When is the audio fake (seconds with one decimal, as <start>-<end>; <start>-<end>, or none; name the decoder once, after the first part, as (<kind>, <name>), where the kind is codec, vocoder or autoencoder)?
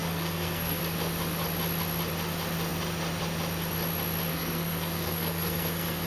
0.0-0.8 (codec, SNAC); 4.3-6.1